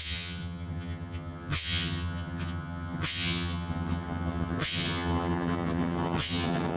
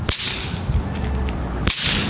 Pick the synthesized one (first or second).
first